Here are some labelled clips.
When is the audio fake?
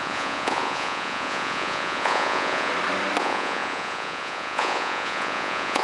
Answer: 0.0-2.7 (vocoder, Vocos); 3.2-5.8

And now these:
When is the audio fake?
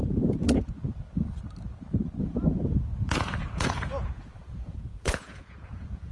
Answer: 0.0-0.7 (vocoder, Vocos); 2.2-6.1